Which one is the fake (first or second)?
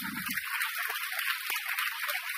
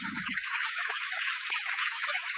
second